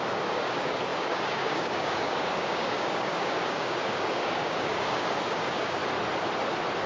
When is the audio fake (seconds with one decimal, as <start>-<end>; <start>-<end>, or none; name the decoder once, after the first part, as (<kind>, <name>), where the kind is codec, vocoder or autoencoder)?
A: 0.0-5.8 (codec, DAC)